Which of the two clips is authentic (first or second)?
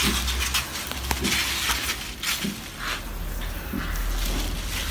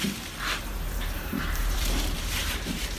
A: first